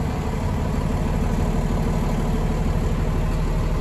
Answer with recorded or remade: recorded